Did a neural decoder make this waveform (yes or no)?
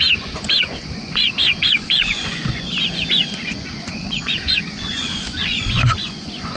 yes